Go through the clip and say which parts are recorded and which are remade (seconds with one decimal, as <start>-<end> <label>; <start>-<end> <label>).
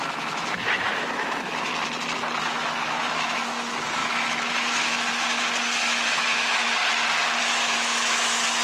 0.0-1.7 remade; 1.7-2.4 recorded; 2.4-6.8 remade; 6.8-7.4 recorded; 7.4-8.6 remade